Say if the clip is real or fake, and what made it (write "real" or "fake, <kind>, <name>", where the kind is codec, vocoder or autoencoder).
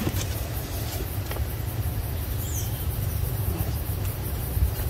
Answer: fake, vocoder, BigVGAN v2